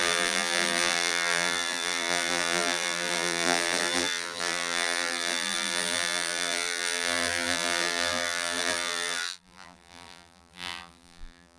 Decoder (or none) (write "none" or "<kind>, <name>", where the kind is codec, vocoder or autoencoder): vocoder, BigVGAN v2